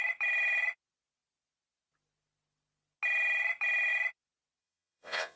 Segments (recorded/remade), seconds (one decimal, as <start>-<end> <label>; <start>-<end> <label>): 0.0-4.6 recorded; 4.6-5.4 remade